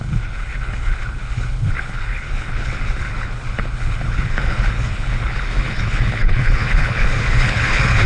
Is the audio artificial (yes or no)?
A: yes